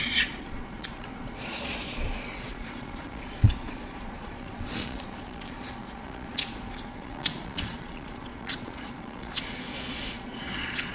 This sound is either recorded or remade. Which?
remade